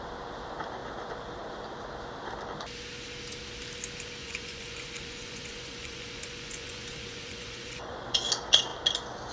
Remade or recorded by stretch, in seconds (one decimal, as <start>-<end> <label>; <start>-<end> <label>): 0.0-4.2 recorded; 4.2-8.2 remade; 8.2-9.3 recorded